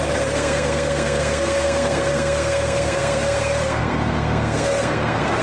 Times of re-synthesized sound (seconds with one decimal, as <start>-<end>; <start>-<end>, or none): 0.0-5.4